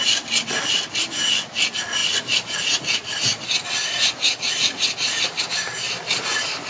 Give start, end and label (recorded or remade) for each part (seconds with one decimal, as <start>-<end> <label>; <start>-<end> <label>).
0.0-6.7 recorded